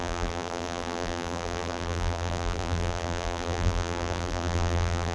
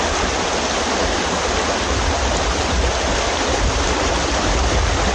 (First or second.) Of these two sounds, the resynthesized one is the first